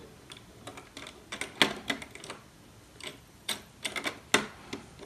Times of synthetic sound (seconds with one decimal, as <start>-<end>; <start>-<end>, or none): 3.1-3.7